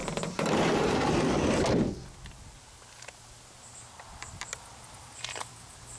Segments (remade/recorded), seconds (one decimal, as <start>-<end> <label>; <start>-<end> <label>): 0.0-3.6 recorded; 3.6-6.0 remade